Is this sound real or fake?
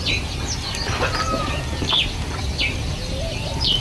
real